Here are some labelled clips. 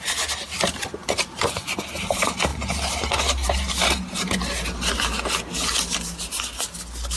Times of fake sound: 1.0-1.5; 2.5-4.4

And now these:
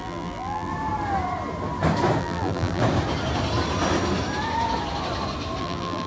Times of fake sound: 0.0-0.7; 2.2-2.8; 5.6-6.1

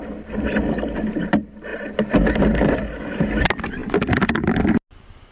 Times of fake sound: none